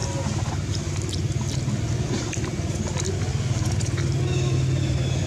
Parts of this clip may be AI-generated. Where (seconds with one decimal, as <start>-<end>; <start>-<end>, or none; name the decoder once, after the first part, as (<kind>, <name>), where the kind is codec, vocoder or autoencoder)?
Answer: none